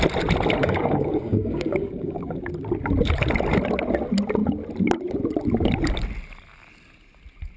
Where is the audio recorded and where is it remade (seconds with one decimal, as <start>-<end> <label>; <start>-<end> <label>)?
0.0-0.6 recorded; 0.6-2.5 remade; 2.5-7.6 recorded